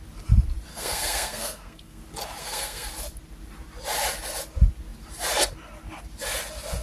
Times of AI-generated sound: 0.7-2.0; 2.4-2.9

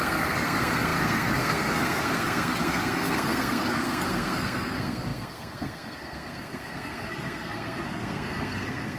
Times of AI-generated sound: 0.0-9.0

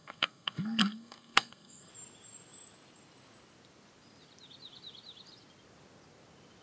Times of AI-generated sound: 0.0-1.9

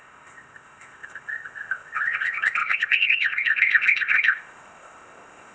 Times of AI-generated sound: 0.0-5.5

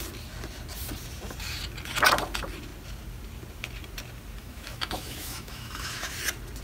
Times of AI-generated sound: 4.4-6.1

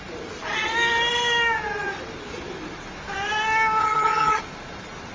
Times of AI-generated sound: 3.8-4.4